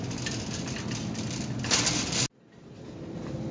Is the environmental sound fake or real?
real